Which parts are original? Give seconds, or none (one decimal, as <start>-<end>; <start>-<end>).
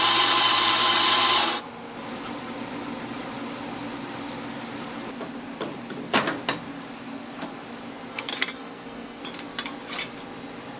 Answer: 0.0-8.1; 9.2-10.8